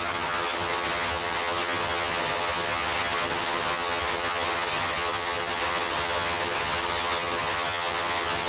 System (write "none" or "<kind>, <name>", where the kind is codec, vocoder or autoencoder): vocoder, HiFi-GAN